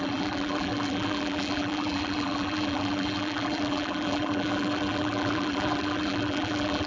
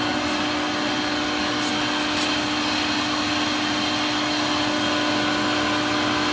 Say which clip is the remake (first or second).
first